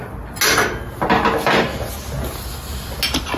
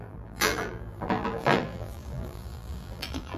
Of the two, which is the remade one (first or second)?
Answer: second